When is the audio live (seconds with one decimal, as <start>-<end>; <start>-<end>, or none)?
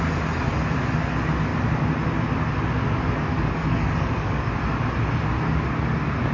0.0-3.3; 4.4-6.3